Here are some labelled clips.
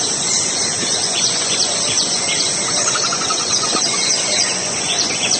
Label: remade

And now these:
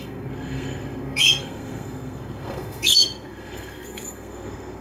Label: remade